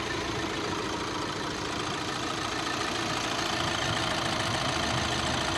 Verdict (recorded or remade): recorded